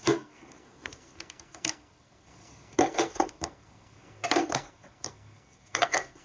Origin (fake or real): fake